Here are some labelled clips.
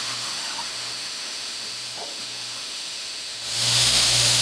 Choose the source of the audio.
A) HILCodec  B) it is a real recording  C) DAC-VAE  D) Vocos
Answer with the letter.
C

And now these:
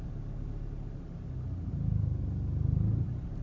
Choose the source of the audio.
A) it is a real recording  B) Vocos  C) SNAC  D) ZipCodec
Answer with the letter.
A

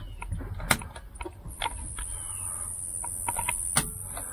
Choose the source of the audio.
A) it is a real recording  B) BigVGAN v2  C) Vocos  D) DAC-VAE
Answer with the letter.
A